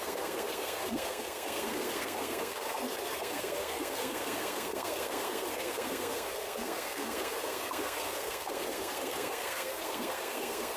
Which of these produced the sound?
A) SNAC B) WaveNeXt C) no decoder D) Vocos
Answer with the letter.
A